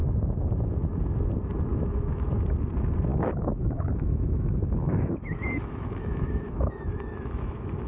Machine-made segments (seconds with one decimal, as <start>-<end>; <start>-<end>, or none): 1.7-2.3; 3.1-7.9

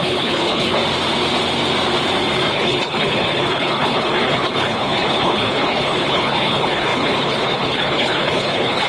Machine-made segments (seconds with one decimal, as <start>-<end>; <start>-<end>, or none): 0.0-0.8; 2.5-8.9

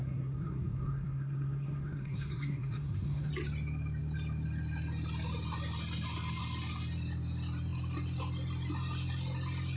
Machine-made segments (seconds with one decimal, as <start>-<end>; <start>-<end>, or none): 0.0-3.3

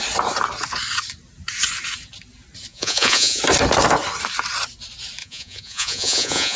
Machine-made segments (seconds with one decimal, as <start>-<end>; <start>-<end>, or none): 2.7-3.4; 5.2-6.6

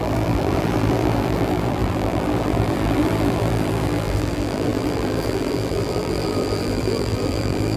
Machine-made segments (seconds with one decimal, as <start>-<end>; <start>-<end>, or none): 0.0-7.8